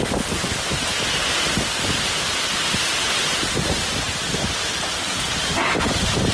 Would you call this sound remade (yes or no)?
no